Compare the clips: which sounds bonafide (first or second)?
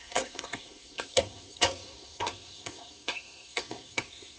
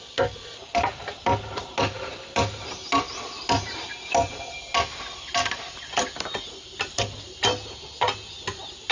second